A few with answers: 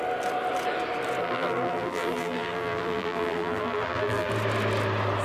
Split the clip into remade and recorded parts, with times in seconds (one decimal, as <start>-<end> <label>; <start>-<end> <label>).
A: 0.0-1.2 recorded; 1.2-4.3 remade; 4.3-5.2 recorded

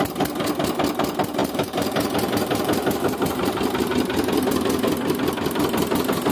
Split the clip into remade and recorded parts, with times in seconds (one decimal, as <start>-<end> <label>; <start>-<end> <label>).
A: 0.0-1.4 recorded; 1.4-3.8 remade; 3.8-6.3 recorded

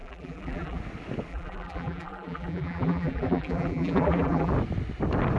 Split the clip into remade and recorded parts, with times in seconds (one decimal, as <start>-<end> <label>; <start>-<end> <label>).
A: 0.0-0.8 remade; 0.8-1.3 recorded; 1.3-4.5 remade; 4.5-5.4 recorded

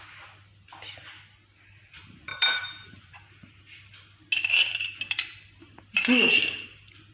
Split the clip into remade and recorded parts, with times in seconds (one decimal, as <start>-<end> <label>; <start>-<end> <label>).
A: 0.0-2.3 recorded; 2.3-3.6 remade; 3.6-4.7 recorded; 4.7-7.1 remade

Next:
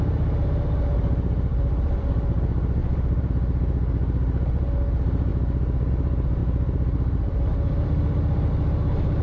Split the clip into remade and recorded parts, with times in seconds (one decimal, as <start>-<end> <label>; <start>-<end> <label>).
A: 0.0-1.5 recorded; 1.5-2.1 remade; 2.1-2.8 recorded; 2.8-3.3 remade; 3.3-6.4 recorded; 6.4-8.5 remade; 8.5-9.2 recorded

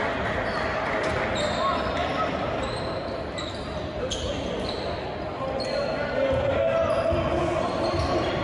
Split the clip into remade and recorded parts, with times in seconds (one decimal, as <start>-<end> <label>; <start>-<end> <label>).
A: 0.0-2.0 recorded; 2.0-5.8 remade; 5.8-8.4 recorded

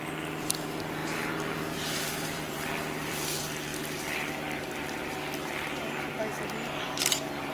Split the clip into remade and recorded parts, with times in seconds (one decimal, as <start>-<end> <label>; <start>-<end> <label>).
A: 0.0-1.0 recorded; 1.0-3.1 remade; 3.1-7.5 recorded

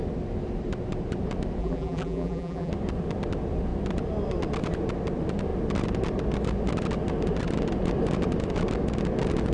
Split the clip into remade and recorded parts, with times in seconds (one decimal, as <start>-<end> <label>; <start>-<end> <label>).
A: 0.0-1.6 recorded; 1.6-2.7 remade; 2.7-9.5 recorded